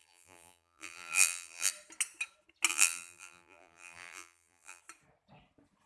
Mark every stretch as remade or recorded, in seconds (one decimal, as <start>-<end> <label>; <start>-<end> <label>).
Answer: 0.0-1.7 remade; 1.7-2.7 recorded; 2.7-4.8 remade; 4.8-5.9 recorded